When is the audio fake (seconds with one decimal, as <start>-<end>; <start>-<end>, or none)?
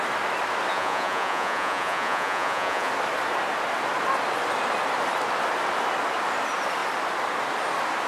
0.7-2.9